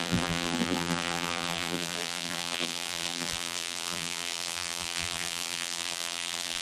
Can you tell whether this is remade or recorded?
remade